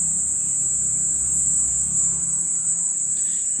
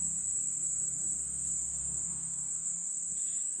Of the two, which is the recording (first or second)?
first